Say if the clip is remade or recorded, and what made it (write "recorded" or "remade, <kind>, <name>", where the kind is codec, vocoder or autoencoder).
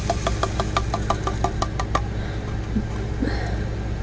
recorded